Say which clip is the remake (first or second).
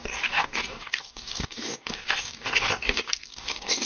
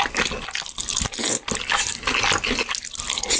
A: first